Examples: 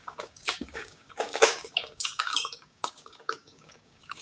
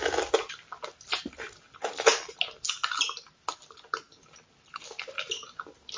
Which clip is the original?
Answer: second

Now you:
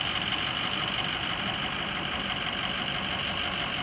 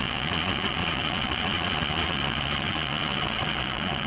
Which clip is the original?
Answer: first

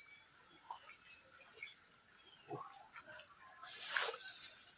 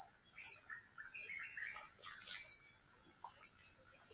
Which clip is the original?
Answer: first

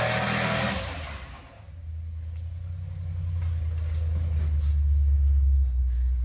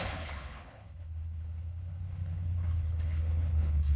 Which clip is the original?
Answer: first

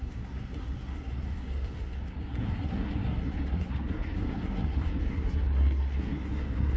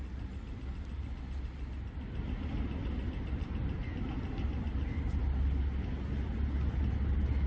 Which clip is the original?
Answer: second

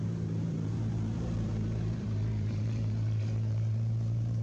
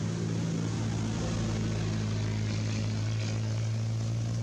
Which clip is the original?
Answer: second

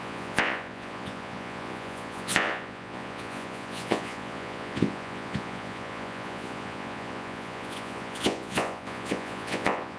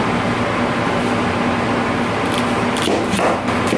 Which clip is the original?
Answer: second